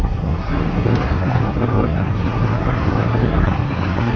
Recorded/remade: remade